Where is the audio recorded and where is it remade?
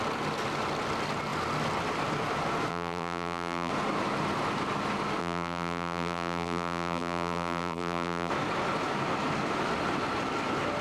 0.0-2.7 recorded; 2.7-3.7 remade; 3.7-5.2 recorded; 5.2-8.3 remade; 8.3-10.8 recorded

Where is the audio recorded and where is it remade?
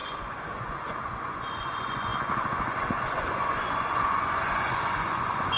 0.0-5.6 remade